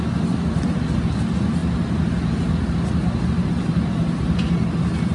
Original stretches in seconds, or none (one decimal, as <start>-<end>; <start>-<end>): 0.0-5.1